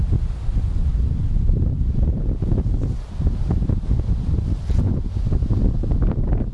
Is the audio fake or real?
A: real